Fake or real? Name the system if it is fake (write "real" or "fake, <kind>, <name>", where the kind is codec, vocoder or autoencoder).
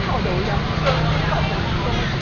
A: real